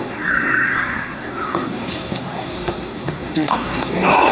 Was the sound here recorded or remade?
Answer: remade